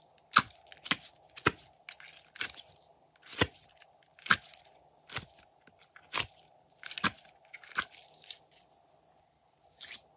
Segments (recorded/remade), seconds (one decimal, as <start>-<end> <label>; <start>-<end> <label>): 0.0-10.2 recorded

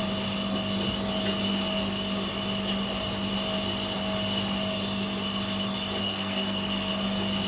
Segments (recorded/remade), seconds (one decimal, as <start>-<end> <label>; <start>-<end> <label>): 0.0-6.0 recorded; 6.0-6.9 remade; 6.9-7.5 recorded

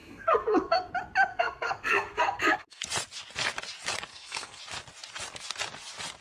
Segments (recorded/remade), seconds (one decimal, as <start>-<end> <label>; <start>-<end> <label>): 0.0-0.9 remade; 0.9-1.3 recorded; 1.3-2.8 remade; 2.8-4.1 recorded; 4.1-4.6 remade; 4.6-6.2 recorded

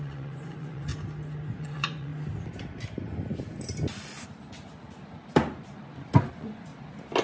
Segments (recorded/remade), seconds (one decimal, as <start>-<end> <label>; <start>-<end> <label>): 0.0-0.9 remade; 0.9-1.5 recorded; 1.5-2.1 remade; 2.1-6.3 recorded; 6.3-6.7 remade; 6.7-7.2 recorded

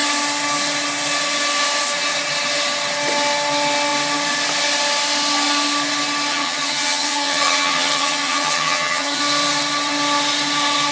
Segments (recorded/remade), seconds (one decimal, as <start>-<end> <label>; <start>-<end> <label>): 0.0-6.3 recorded; 6.3-9.2 remade; 9.2-10.9 recorded

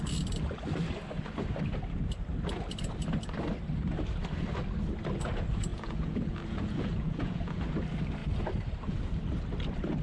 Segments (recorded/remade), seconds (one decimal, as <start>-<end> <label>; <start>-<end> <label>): 0.0-5.7 recorded; 5.7-7.6 remade; 7.6-10.0 recorded

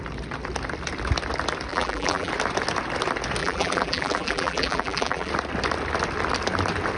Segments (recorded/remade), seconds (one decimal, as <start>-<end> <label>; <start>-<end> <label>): 0.0-1.7 recorded; 1.7-2.3 remade; 2.3-3.4 recorded; 3.4-5.3 remade; 5.3-7.0 recorded